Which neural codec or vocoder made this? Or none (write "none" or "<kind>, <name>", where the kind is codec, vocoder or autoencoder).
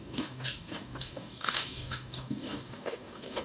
codec, DAC